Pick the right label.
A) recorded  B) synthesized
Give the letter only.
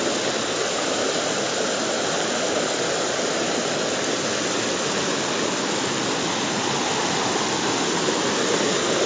A